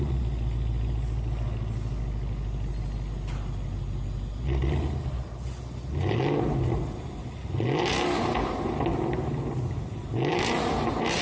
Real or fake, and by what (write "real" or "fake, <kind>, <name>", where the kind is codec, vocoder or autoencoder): real